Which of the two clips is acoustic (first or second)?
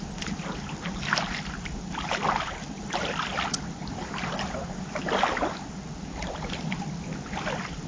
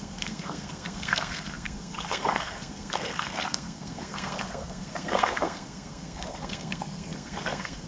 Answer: first